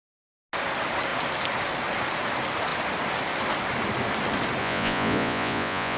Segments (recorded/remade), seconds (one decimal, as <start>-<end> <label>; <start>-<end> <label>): 0.0-4.6 recorded; 4.6-6.0 remade